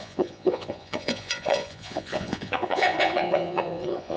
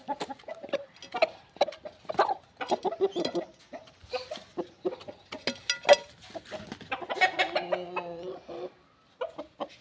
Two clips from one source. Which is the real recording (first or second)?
second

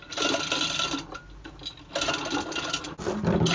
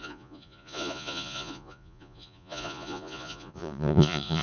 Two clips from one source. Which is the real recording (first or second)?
first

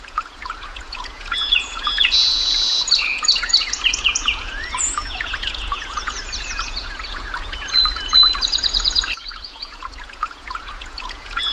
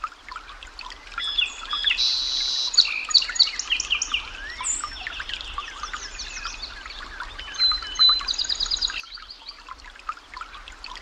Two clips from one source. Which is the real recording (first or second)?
second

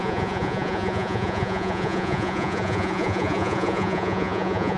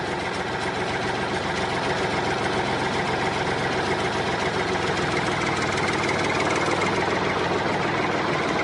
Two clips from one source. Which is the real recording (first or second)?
second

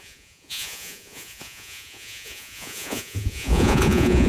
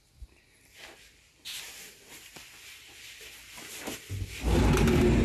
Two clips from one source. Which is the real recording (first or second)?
second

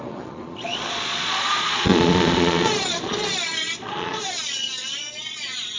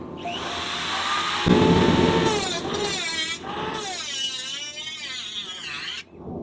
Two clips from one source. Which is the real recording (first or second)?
second